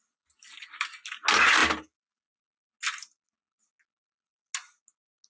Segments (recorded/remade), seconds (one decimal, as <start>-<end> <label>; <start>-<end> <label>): 0.0-5.3 recorded